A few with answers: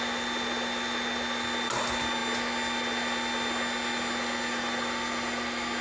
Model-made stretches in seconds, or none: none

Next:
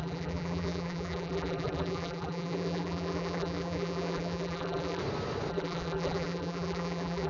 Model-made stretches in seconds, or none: 0.0-5.0 (vocoder, BigVGAN v2); 5.5-7.3

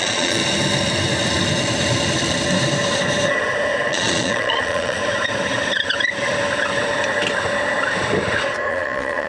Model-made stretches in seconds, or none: 0.0-0.4 (vocoder, Vocos); 3.9-5.0; 8.7-9.3

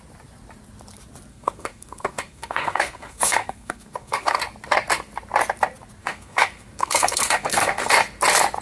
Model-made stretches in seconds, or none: 1.3-4.4 (codec, SNAC); 6.0-7.9

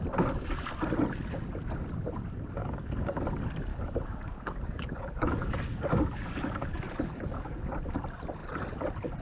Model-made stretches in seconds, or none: 2.6-3.2 (codec, DAC); 3.7-7.7

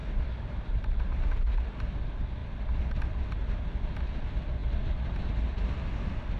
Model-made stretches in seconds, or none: none

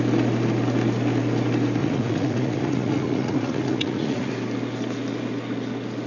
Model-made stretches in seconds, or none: 1.8-4.3 (vocoder, Vocos)

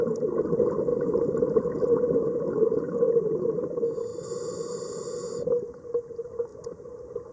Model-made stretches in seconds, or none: none